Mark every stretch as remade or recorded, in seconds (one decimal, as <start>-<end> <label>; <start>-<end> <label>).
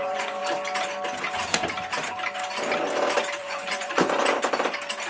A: 0.0-0.4 remade; 0.4-3.4 recorded; 3.4-4.2 remade; 4.2-5.1 recorded